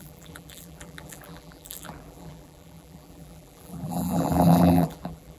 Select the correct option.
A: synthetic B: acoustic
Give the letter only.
A